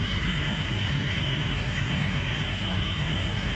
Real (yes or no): no